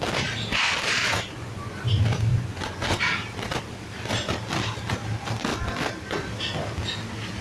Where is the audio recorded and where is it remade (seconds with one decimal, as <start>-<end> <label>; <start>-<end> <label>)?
0.0-1.0 recorded; 1.0-1.9 remade; 1.9-2.3 recorded; 2.3-3.0 remade; 3.0-7.4 recorded